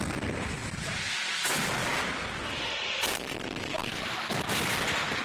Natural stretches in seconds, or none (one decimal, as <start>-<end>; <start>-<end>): 0.0-5.2